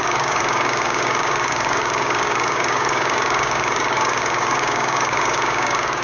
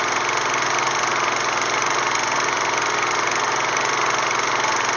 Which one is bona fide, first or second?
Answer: second